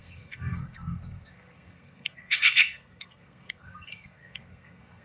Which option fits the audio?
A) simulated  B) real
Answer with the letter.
A